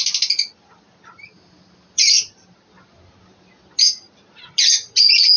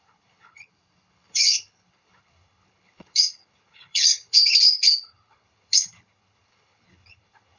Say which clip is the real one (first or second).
first